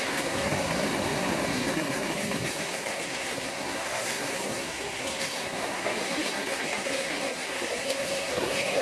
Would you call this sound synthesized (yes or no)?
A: yes